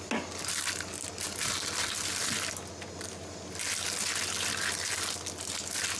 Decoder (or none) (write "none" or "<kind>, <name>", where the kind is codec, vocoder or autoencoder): none